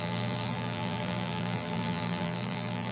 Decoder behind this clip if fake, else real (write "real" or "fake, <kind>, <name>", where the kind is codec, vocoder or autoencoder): fake, vocoder, BigVGAN v2